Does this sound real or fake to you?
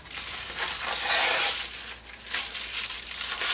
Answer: real